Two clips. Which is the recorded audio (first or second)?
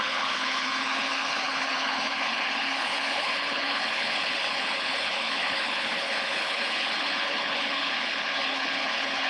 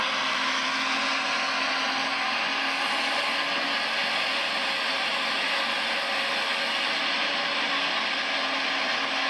second